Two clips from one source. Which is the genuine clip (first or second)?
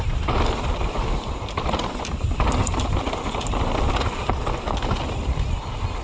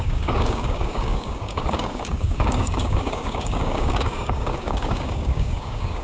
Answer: first